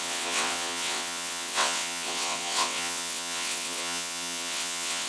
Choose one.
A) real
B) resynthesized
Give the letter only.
B